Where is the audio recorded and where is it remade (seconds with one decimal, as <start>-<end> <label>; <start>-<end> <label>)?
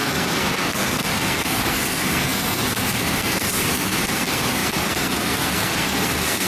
0.0-6.5 remade